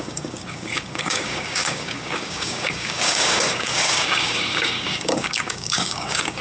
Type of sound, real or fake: fake